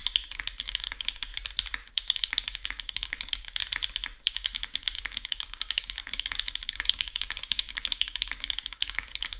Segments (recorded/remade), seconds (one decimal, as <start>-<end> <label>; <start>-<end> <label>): 0.0-0.6 recorded; 0.6-1.3 remade; 1.3-1.9 recorded; 1.9-3.6 remade; 3.6-4.3 recorded; 4.3-9.4 remade